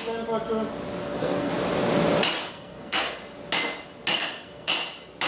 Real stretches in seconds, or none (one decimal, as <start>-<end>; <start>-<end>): 0.0-1.0; 1.5-2.4; 3.2-4.1; 4.7-5.3